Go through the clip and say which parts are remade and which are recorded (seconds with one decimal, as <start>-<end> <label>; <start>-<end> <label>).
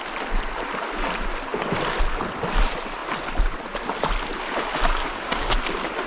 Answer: 0.0-5.0 recorded; 5.0-5.5 remade; 5.5-6.1 recorded